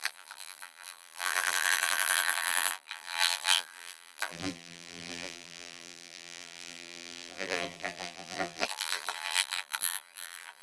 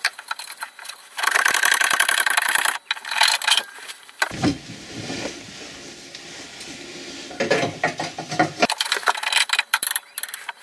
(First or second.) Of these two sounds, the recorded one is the second